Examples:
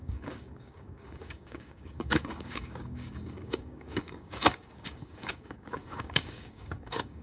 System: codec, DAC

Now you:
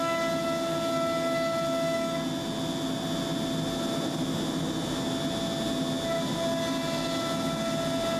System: none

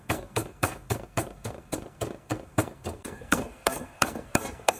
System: codec, SNAC